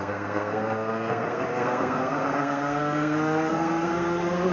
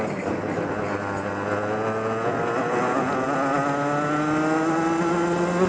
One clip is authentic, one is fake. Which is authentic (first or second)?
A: second